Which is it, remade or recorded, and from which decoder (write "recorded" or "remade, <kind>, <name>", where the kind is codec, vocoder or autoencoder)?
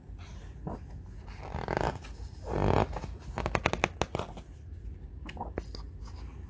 recorded